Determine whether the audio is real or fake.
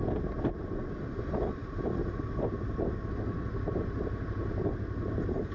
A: real